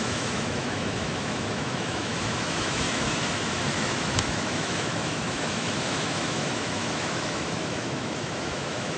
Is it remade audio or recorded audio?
remade